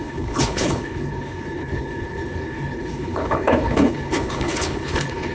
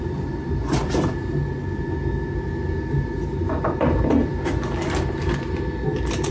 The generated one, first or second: first